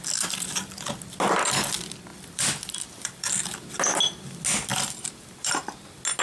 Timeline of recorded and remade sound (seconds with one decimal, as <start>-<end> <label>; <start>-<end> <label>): 0.0-2.1 recorded; 2.1-3.3 remade; 3.3-4.7 recorded; 4.7-5.6 remade; 5.6-6.2 recorded